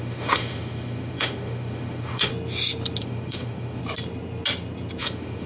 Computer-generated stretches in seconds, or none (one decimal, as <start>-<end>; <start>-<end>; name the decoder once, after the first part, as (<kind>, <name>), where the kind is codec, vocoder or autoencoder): 0.0-2.3 (autoencoder, DAC-VAE); 3.0-3.8; 5.0-5.5